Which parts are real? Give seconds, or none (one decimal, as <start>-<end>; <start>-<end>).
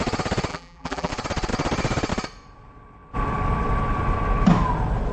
0.0-0.5; 1.1-5.1